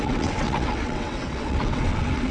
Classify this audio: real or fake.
fake